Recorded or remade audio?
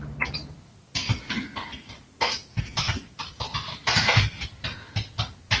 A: recorded